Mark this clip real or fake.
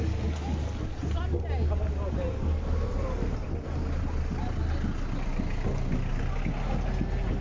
real